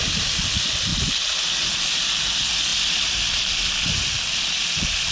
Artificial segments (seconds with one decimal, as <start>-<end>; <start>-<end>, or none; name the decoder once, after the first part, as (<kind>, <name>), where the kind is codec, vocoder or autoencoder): none